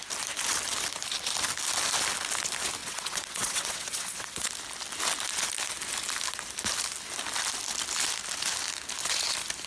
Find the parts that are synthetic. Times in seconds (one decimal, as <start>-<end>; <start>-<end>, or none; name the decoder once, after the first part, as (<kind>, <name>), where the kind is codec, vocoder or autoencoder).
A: 2.8-4.5 (vocoder, WaveNeXt)